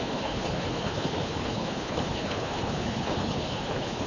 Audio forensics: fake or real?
fake